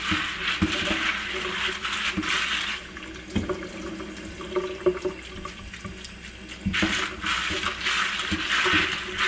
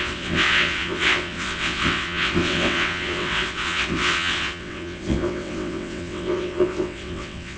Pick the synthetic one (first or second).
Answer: second